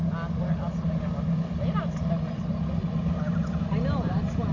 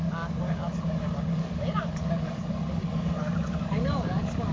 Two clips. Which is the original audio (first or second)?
first